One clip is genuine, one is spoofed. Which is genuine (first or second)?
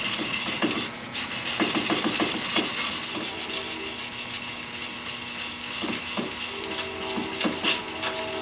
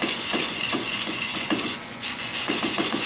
first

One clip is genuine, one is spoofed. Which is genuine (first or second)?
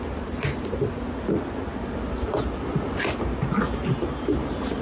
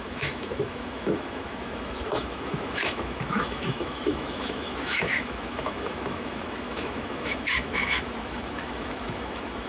first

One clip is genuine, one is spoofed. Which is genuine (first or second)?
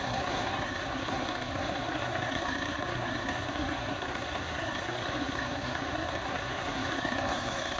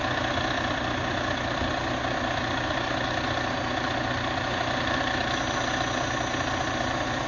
second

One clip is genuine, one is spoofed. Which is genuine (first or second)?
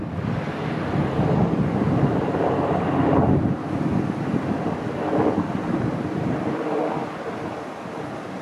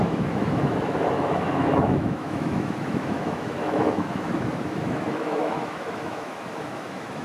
first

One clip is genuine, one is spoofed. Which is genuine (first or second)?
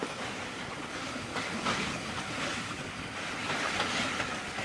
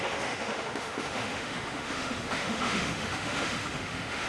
first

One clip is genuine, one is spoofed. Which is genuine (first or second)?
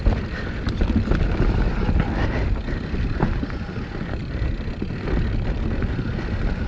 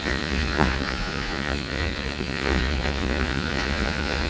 first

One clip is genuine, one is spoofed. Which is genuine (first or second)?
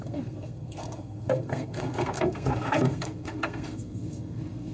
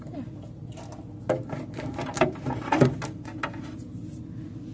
second